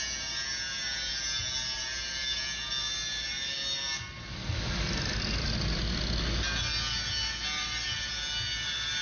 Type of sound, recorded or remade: recorded